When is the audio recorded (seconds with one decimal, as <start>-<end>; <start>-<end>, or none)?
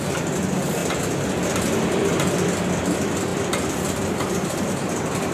none